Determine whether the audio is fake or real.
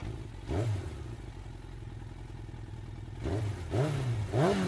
real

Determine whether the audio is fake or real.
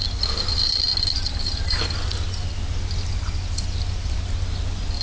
real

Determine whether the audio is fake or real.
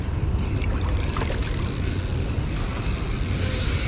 real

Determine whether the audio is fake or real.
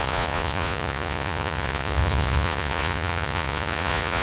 fake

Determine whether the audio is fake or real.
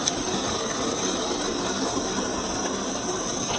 real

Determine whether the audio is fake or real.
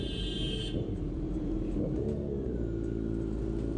real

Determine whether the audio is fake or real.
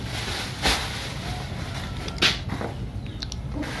real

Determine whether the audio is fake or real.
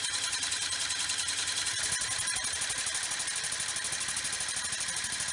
real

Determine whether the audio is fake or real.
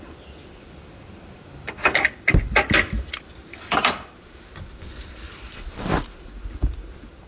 fake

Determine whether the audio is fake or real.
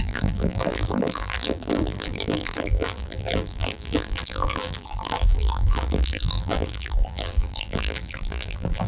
fake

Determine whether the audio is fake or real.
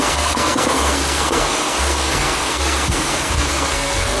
fake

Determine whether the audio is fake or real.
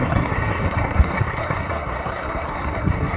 fake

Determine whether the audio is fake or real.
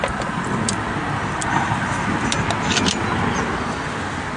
real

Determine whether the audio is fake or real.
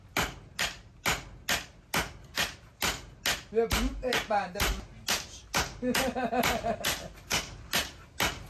real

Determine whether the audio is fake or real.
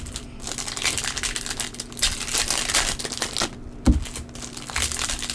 real